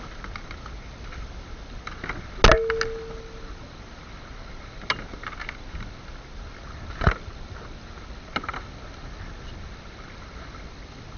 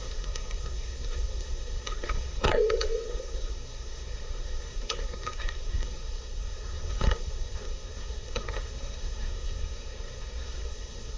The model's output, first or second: second